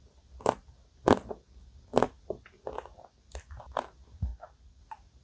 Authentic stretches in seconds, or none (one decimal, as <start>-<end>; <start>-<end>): 0.0-5.2